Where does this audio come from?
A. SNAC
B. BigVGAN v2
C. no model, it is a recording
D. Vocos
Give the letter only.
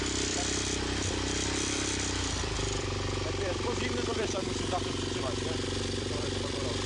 B